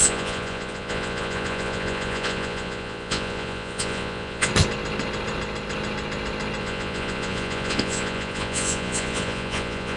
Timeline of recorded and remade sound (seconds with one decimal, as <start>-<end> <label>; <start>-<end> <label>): 0.0-4.5 remade; 4.5-6.6 recorded; 6.6-10.0 remade